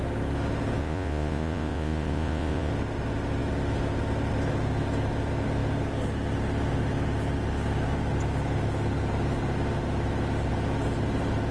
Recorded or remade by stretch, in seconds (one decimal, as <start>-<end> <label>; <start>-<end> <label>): 0.0-0.8 recorded; 0.8-2.7 remade; 2.7-11.5 recorded